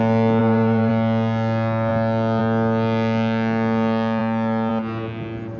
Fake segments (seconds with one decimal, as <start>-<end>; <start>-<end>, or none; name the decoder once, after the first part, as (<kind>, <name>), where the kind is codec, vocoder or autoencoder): 0.4-0.9 (vocoder, BigVGAN v2)